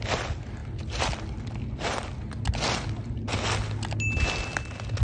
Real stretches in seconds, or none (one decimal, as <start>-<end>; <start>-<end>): 0.0-5.0